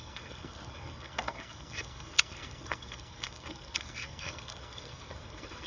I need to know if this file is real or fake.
fake